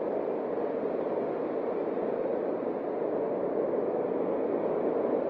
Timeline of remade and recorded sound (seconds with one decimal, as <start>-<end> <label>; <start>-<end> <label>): 0.0-5.3 recorded